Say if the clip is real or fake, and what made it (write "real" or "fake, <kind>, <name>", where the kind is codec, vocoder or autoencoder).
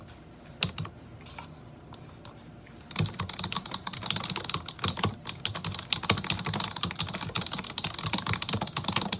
real